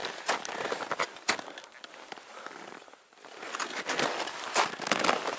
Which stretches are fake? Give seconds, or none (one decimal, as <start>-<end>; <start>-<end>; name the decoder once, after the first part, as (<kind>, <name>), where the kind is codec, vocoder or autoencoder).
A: none